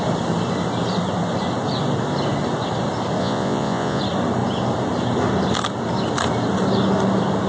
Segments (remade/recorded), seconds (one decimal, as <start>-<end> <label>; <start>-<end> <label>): 0.0-3.2 recorded; 3.2-4.0 remade; 4.0-7.5 recorded